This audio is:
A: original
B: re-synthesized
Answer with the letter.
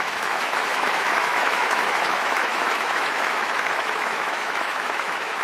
B